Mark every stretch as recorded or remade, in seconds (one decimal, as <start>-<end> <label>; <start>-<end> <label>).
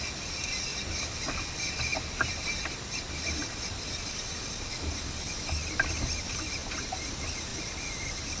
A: 0.0-0.7 recorded; 0.7-1.3 remade; 1.3-7.5 recorded; 7.5-8.4 remade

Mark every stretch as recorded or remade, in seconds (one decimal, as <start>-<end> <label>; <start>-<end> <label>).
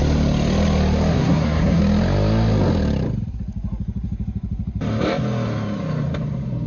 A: 0.0-1.1 recorded; 1.1-1.8 remade; 1.8-6.7 recorded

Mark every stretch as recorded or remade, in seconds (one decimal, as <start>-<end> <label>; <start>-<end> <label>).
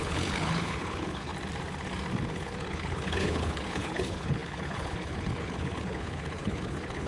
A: 0.0-1.3 remade; 1.3-2.3 recorded; 2.3-7.1 remade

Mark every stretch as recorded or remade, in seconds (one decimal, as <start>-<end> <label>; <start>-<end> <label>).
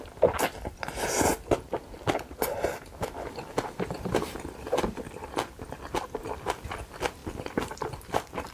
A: 0.0-8.5 recorded